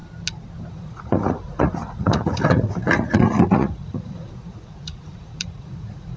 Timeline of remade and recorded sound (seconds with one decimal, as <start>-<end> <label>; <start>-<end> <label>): 0.0-0.7 recorded; 0.7-6.2 remade